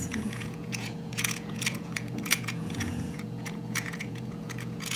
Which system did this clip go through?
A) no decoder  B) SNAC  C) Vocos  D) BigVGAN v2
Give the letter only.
C